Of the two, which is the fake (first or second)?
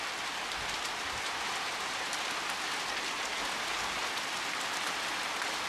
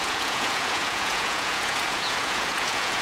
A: second